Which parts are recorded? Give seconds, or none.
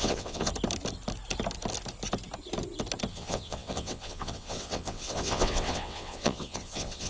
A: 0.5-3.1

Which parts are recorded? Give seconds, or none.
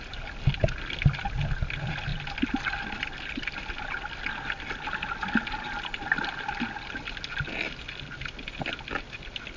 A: 0.0-9.6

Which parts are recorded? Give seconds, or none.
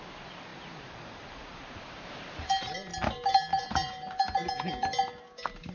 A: 0.0-0.5; 1.8-5.7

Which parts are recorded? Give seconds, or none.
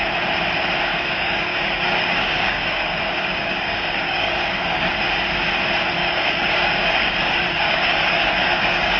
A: 0.0-0.9; 4.9-6.0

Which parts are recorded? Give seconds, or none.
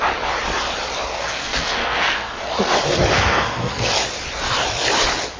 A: 0.0-1.1; 2.3-3.1; 3.9-5.4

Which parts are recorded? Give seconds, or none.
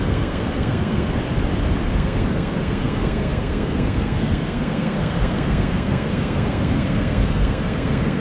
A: 1.2-1.9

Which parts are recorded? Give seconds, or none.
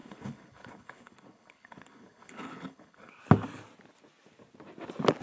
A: 3.1-5.2